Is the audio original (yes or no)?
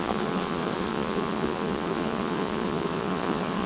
no